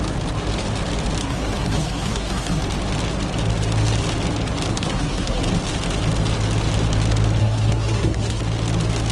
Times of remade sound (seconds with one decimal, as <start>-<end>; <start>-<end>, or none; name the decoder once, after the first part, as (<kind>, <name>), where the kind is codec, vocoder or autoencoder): 1.2-2.6 (codec, SNAC); 4.7-5.4; 7.4-8.4